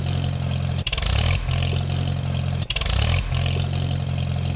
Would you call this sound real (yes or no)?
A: yes